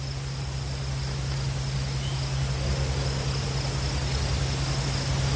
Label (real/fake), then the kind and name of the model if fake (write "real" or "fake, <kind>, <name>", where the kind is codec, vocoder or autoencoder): real